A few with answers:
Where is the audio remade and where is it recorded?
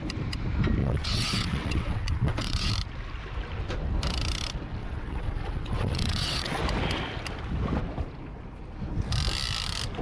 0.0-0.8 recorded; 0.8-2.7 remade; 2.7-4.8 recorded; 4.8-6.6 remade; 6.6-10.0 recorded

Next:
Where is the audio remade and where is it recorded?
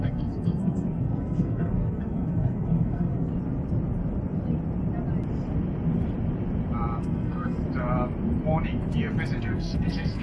0.0-3.3 remade; 3.3-7.0 recorded; 7.0-7.6 remade; 7.6-9.4 recorded; 9.4-10.2 remade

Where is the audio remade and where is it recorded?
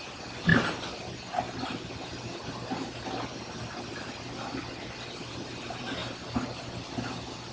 0.0-0.5 recorded; 0.5-4.6 remade; 4.6-6.0 recorded; 6.0-6.5 remade; 6.5-7.5 recorded